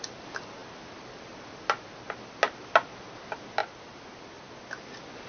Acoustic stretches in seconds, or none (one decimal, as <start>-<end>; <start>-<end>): 0.0-0.6; 2.2-3.6; 4.7-5.3